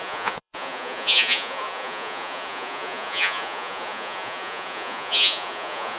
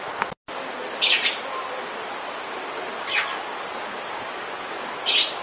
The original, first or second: second